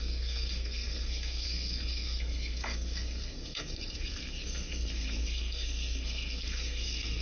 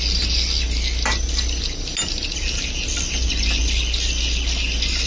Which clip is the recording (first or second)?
second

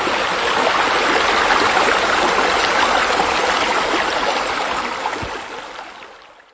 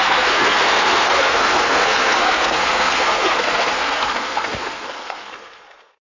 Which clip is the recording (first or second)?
first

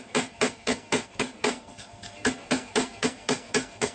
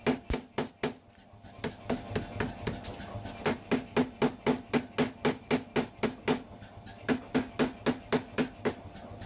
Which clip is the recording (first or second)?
second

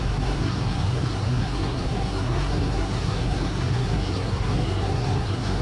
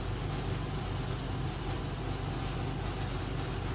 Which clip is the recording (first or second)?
second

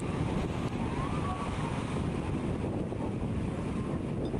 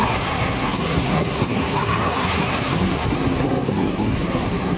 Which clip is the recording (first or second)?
first